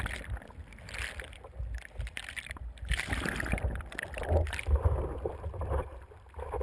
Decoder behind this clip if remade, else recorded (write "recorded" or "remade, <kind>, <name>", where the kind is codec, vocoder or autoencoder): remade, vocoder, BigVGAN v2